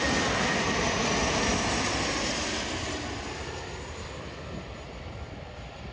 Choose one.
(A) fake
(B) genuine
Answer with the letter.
B